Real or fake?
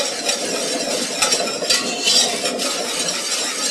real